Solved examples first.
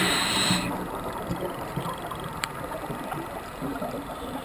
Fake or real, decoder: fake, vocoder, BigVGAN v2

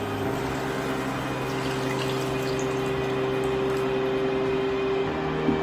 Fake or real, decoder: real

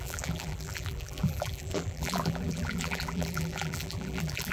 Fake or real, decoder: fake, vocoder, BigVGAN v2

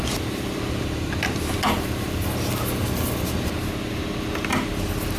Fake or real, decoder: real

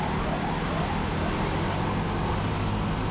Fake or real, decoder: real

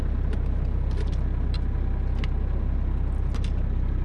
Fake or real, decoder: real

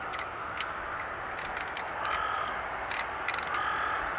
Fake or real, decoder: real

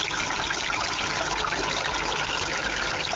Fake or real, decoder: real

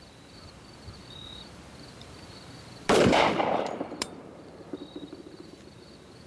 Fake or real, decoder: fake, vocoder, BigVGAN v2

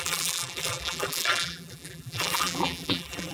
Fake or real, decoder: fake, vocoder, BigVGAN v2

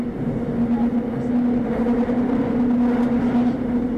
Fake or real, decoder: real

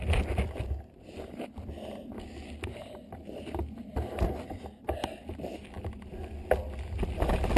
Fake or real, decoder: real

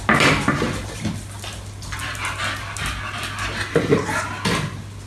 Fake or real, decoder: real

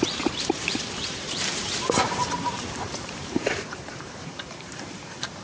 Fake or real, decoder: fake, vocoder, BigVGAN v2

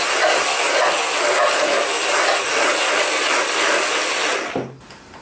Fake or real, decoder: real